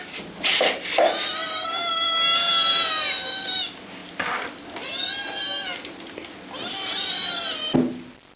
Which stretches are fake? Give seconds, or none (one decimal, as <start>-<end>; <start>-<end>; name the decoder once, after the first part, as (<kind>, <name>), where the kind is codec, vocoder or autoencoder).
none